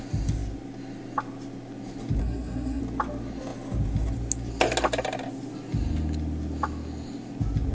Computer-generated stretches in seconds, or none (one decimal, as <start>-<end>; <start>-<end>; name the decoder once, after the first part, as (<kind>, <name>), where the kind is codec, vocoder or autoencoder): 2.2-2.8 (codec, SNAC)